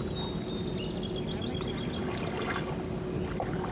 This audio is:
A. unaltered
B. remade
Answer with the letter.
A